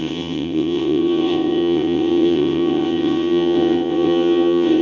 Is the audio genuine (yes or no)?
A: no